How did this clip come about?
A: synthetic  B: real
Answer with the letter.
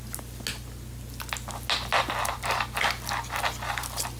B